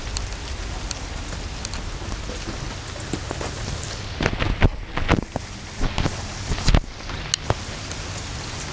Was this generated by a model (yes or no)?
no